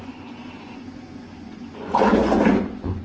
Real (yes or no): no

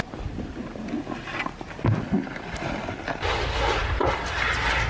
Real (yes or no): yes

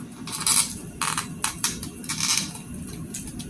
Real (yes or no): yes